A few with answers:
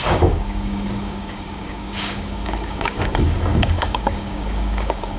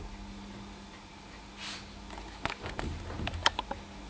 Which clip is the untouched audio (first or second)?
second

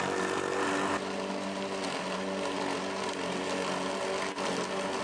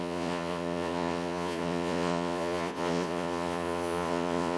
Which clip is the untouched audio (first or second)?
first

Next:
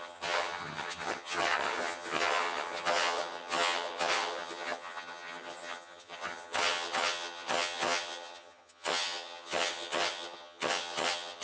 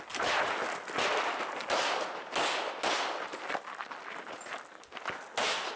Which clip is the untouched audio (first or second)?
second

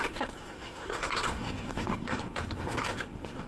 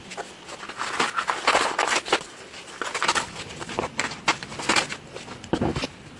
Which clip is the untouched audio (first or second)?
second